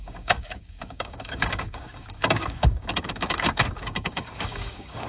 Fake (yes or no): yes